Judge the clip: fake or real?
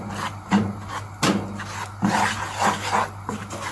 real